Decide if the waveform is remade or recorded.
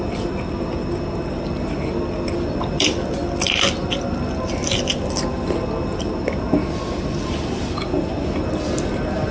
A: recorded